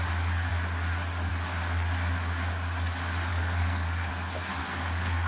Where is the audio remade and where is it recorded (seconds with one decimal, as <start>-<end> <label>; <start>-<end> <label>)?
0.0-3.3 recorded; 3.3-4.1 remade; 4.1-4.6 recorded; 4.6-5.3 remade